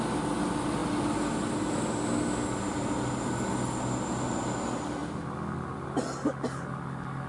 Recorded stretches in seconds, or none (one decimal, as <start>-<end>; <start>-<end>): 0.0-7.3